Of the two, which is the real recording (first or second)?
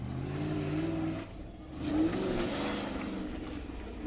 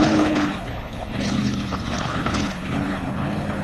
first